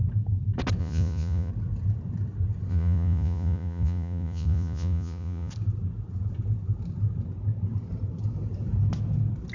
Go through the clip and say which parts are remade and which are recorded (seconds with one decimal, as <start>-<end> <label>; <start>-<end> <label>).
0.0-0.8 recorded; 0.8-1.5 remade; 1.5-2.7 recorded; 2.7-5.5 remade; 5.5-9.5 recorded

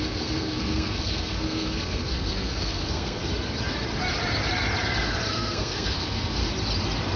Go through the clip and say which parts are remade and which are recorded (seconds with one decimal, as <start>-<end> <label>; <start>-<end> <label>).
0.0-3.2 remade; 3.2-5.3 recorded; 5.3-6.4 remade; 6.4-7.2 recorded

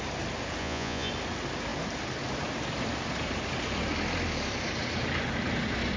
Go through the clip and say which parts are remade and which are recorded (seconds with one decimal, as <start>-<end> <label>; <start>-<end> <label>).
0.0-0.6 recorded; 0.6-1.1 remade; 1.1-6.0 recorded

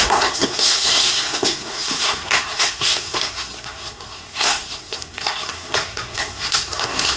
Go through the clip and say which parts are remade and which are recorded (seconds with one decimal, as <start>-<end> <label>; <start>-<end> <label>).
0.0-7.2 remade

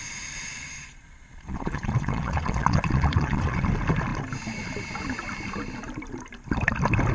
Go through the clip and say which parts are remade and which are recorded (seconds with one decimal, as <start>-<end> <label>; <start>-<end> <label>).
0.0-0.5 recorded; 0.5-3.6 remade; 3.6-7.1 recorded

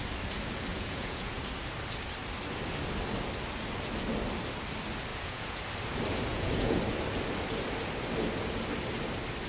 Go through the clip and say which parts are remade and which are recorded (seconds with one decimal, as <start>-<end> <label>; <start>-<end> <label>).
0.0-0.7 recorded; 0.7-1.4 remade; 1.4-5.1 recorded; 5.1-5.6 remade; 5.6-6.3 recorded; 6.3-6.8 remade; 6.8-9.5 recorded

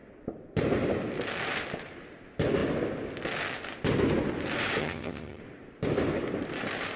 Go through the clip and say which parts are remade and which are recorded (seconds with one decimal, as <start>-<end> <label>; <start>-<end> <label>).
0.0-4.8 recorded; 4.8-5.4 remade; 5.4-7.0 recorded